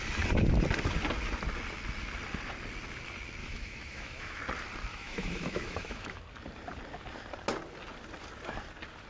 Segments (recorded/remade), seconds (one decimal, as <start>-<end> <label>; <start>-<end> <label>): 0.0-3.4 recorded; 3.4-4.4 remade; 4.4-4.9 recorded; 4.9-6.2 remade; 6.2-9.1 recorded